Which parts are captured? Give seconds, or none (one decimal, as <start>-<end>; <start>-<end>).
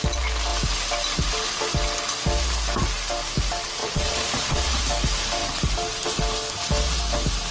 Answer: 0.0-3.8; 4.8-7.5